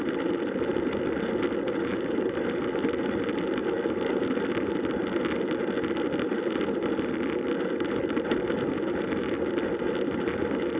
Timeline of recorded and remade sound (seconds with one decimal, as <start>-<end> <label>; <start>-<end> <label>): 0.0-1.9 recorded; 1.9-2.5 remade; 2.5-10.8 recorded